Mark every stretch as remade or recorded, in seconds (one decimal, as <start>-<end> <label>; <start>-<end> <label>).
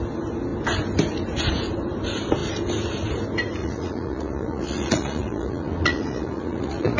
0.0-3.6 recorded; 3.6-7.0 remade